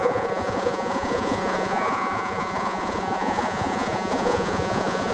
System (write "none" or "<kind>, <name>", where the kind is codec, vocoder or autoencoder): vocoder, Vocos